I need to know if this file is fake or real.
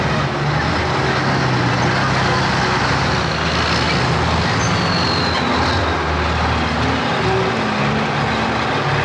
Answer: real